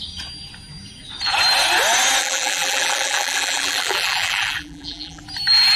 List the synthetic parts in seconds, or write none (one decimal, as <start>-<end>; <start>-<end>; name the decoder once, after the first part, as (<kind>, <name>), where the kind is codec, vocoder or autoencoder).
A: 2.2-5.2 (vocoder, BigVGAN v2)